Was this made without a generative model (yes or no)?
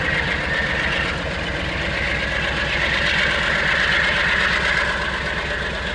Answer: yes